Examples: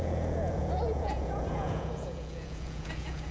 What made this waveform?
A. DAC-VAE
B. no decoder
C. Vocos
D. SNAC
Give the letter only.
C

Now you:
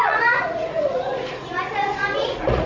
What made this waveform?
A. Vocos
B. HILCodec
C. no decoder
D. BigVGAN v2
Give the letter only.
A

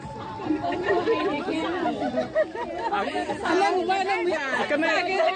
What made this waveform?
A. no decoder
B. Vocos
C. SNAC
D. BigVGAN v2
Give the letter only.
A